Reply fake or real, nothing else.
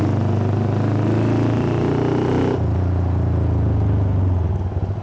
real